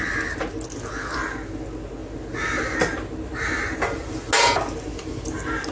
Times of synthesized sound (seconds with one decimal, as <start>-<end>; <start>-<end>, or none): none